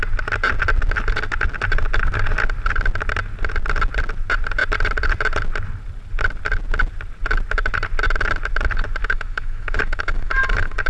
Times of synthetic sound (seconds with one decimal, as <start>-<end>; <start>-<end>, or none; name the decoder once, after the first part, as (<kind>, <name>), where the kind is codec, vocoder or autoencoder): 9.0-10.9 (autoencoder, DAC-VAE)